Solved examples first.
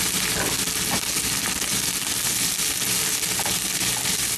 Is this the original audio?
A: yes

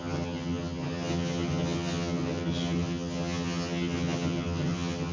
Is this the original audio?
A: no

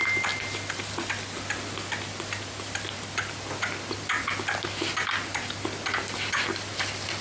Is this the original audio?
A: yes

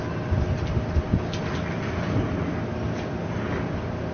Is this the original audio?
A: yes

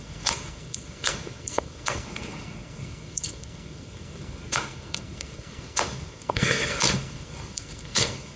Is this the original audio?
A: no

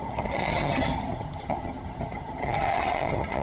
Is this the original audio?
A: no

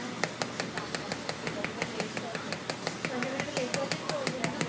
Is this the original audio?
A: yes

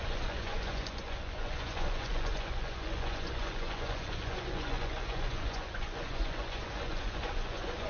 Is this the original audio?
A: no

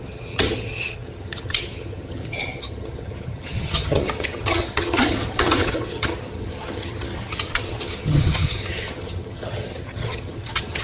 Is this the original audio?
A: no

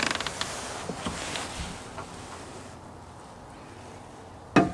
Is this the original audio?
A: yes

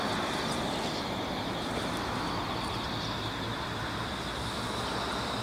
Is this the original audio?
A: yes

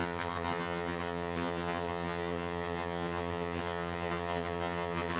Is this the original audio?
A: no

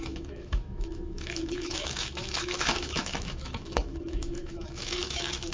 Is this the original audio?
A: no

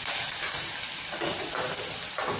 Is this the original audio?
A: yes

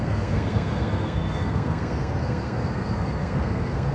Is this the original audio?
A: no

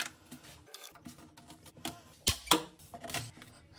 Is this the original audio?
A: yes